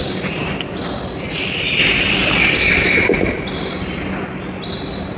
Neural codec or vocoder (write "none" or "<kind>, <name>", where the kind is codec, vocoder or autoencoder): none